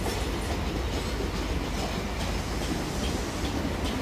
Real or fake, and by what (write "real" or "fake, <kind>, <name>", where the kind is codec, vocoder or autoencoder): real